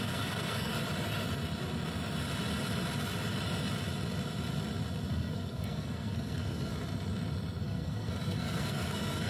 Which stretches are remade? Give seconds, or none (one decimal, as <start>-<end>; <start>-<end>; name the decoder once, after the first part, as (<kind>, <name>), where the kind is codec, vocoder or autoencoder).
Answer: 0.0-0.7 (codec, SNAC); 5.1-6.7; 7.6-9.3